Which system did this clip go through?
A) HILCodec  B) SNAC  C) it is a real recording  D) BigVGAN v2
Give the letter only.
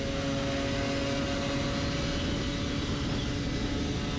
C